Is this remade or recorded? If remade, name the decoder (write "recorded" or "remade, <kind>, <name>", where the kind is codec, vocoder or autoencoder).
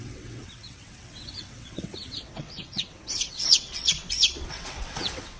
remade, vocoder, WaveNeXt